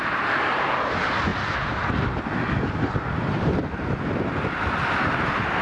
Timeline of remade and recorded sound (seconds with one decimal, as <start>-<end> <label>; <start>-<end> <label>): 0.0-5.6 recorded